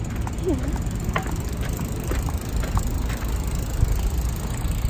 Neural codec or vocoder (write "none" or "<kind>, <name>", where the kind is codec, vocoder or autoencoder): none